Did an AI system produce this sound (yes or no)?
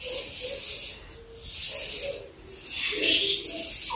no